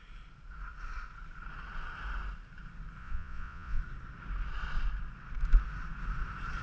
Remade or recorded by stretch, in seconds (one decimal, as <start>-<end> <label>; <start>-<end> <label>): 0.0-3.0 recorded; 3.0-3.8 remade; 3.8-6.6 recorded